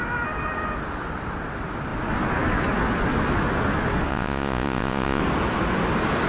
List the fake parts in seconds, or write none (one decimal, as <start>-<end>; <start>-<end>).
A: 4.1-5.2